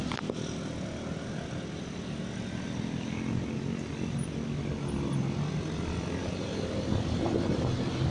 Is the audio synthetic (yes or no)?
no